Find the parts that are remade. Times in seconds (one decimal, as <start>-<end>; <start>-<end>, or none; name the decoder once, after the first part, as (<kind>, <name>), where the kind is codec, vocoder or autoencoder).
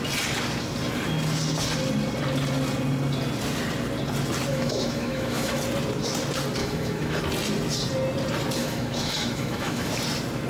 4.5-5.6 (autoencoder, DAC-VAE); 6.6-7.2; 8.6-9.9